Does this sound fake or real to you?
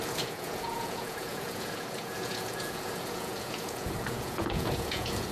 fake